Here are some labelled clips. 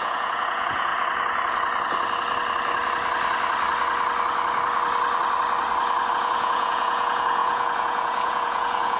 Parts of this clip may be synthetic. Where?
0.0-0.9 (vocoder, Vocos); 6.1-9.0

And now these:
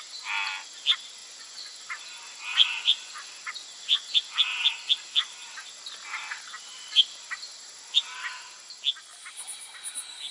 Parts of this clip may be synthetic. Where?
1.2-1.8 (vocoder, Vocos); 2.5-4.2

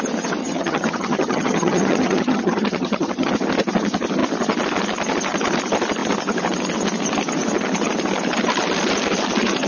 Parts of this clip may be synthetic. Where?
0.4-3.3 (vocoder, HiFi-GAN)

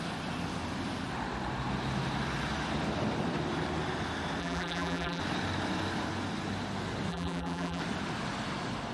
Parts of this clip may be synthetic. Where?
4.4-5.2 (vocoder, BigVGAN v2); 7.1-7.8

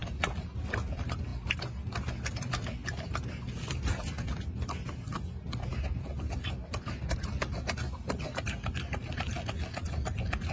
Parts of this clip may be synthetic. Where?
none